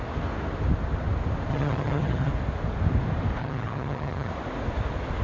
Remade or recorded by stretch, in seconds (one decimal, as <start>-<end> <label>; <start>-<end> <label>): 0.0-1.5 recorded; 1.5-2.3 remade; 2.3-3.4 recorded; 3.4-4.3 remade; 4.3-5.2 recorded